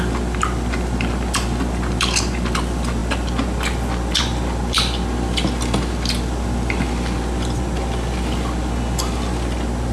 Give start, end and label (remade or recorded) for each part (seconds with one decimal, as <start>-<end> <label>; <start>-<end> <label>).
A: 0.0-9.9 recorded